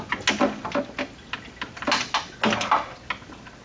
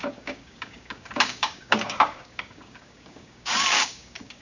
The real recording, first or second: first